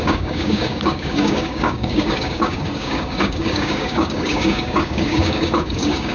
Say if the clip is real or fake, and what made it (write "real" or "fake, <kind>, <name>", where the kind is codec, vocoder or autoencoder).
fake, codec, DAC